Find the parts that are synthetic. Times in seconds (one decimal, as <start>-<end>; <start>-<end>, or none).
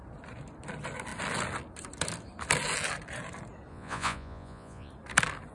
3.7-4.9